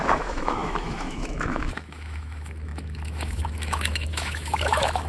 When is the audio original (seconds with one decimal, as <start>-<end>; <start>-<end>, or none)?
none